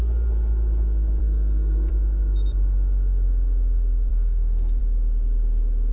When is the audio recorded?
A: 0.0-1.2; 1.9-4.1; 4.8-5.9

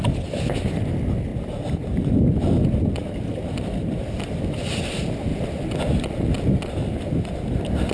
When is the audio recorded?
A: 0.0-1.3; 4.8-5.3; 6.5-7.9

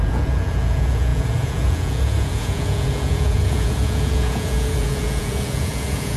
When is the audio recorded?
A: none

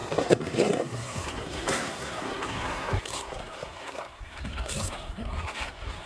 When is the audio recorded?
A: none

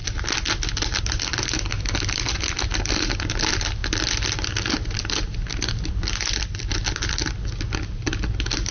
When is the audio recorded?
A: 0.0-8.7

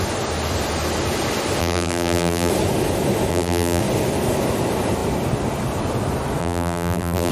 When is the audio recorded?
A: 0.0-1.6; 2.5-3.3; 3.8-6.4

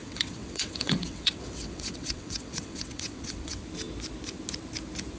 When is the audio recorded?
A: 3.6-5.2

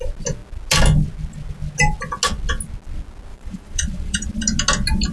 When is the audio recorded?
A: 0.0-3.3; 4.3-5.1